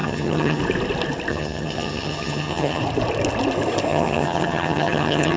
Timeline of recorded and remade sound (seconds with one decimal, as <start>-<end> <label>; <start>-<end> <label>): 0.0-0.6 remade; 0.6-1.3 recorded; 1.3-2.8 remade; 2.8-3.9 recorded; 3.9-5.4 remade